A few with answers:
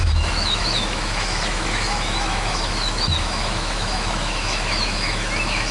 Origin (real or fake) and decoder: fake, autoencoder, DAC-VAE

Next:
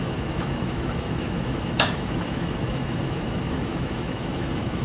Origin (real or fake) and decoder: fake, autoencoder, DAC-VAE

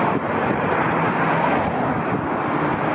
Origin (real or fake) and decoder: real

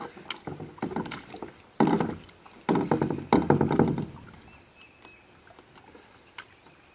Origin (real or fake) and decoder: real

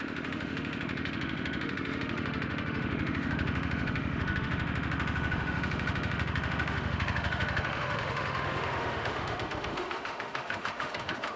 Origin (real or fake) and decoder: fake, autoencoder, DAC-VAE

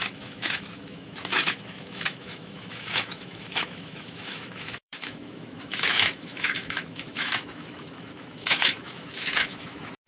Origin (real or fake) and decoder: fake, autoencoder, DAC-VAE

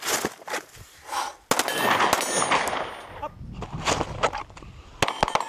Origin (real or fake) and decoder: real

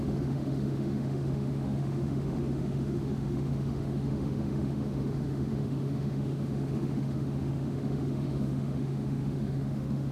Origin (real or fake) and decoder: fake, autoencoder, DAC-VAE